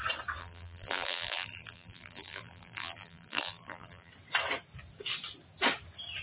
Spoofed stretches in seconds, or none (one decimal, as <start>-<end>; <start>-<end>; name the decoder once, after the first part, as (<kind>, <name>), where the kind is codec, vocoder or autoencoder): 0.4-4.1 (vocoder, BigVGAN v2)